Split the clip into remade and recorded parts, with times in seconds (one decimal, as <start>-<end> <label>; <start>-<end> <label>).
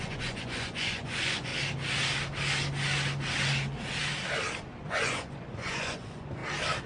0.0-1.5 remade; 1.5-4.8 recorded; 4.8-6.4 remade; 6.4-6.9 recorded